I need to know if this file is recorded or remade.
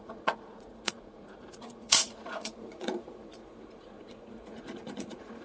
remade